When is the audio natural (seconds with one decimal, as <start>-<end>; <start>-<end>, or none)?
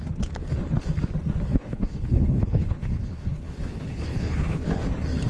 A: 0.0-1.5; 4.7-5.3